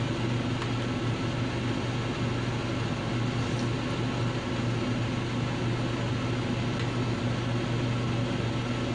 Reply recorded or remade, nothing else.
recorded